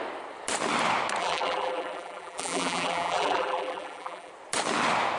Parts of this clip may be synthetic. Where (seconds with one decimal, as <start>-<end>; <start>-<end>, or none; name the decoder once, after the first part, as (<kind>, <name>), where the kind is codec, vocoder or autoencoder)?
1.2-4.3 (vocoder, BigVGAN v2)